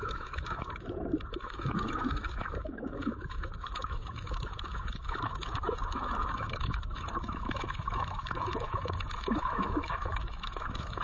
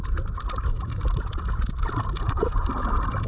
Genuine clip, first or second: second